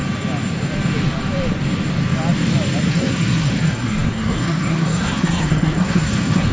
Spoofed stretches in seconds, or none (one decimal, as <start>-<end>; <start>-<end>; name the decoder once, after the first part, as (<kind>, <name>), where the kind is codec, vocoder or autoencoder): 2.9-6.5 (codec, SNAC)